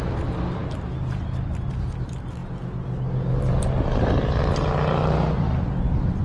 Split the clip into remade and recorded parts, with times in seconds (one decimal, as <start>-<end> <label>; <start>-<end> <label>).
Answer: 0.0-6.2 recorded